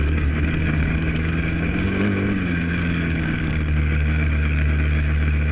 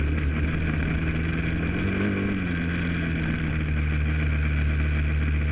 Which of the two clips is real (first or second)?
second